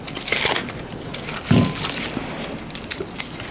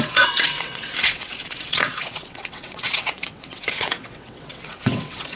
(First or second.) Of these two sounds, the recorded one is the first